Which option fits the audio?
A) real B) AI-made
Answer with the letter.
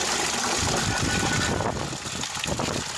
A